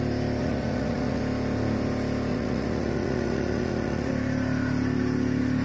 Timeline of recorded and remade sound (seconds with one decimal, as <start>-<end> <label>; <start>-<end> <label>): 0.0-0.4 recorded; 0.4-1.2 remade; 1.2-2.3 recorded; 2.3-4.1 remade; 4.1-5.6 recorded